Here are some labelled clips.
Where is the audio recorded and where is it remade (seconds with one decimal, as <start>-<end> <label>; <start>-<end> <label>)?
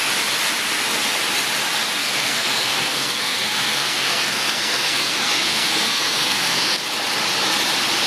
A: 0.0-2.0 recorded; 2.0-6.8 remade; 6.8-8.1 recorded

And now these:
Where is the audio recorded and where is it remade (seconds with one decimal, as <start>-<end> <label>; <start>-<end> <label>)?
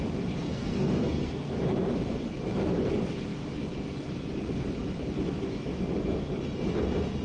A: 0.0-0.5 recorded; 0.5-1.5 remade; 1.5-7.2 recorded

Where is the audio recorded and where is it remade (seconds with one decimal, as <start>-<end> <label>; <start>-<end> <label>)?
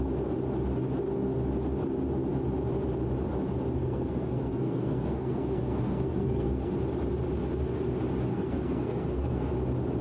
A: 0.0-3.8 recorded; 3.8-6.7 remade; 6.7-8.3 recorded; 8.3-9.5 remade; 9.5-10.0 recorded